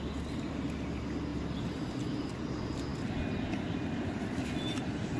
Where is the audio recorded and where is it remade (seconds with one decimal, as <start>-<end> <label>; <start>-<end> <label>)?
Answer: 0.0-5.2 recorded